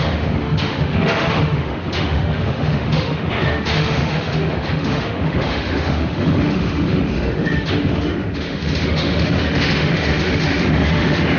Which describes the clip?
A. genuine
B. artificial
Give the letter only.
B